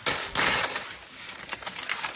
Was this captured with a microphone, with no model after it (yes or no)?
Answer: yes